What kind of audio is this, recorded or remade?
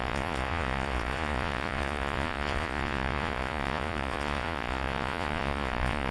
remade